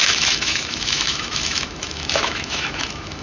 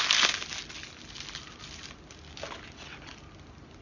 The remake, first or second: first